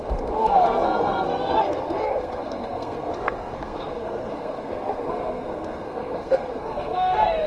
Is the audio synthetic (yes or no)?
yes